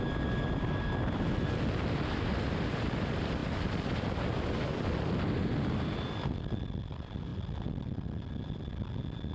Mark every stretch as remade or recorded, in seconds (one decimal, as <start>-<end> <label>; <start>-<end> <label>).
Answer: 0.0-9.3 recorded